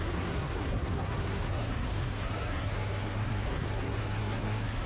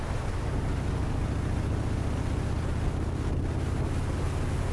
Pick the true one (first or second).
second